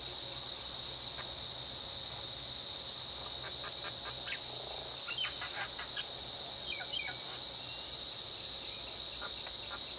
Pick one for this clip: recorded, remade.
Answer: recorded